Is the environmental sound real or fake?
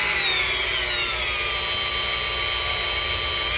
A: real